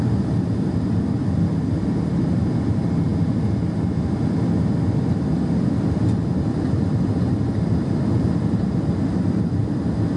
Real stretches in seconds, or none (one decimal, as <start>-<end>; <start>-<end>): 3.1-5.2; 9.6-10.2